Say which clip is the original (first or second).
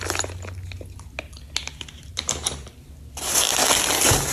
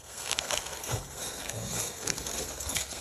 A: first